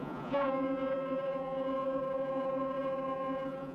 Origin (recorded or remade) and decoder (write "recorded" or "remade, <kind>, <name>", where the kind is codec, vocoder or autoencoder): remade, vocoder, Vocos